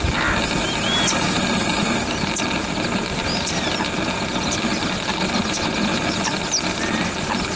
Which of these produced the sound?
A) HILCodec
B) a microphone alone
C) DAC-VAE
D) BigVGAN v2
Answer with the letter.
B